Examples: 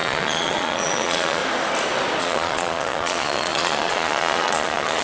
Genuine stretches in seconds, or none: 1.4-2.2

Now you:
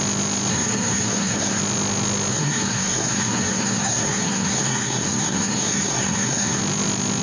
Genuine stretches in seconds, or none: 0.0-0.5; 1.6-2.3; 6.6-7.2